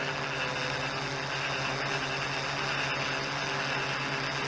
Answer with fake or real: real